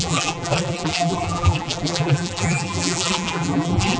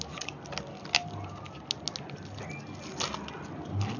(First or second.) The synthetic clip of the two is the first